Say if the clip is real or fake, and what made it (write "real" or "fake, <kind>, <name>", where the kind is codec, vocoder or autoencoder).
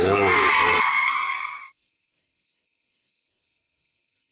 fake, codec, SNAC